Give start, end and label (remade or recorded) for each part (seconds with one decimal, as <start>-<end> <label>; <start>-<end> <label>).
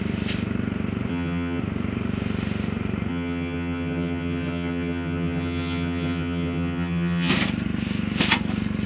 0.0-1.1 recorded; 1.1-1.6 remade; 1.6-3.1 recorded; 3.1-7.3 remade; 7.3-8.9 recorded